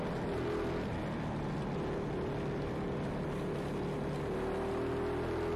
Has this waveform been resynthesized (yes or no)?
no